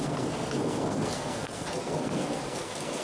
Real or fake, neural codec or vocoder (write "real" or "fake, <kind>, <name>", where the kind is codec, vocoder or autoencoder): fake, codec, SNAC